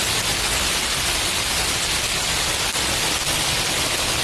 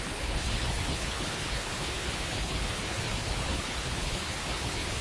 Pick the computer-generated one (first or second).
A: second